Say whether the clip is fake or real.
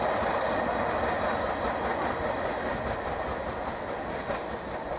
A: real